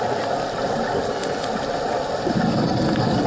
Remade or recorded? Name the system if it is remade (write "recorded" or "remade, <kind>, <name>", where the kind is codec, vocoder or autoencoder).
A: recorded